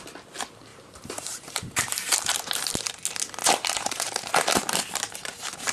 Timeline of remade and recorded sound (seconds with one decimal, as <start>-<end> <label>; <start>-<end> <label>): 0.0-0.7 recorded; 0.7-2.7 remade; 2.7-3.4 recorded; 3.4-4.3 remade; 4.3-5.7 recorded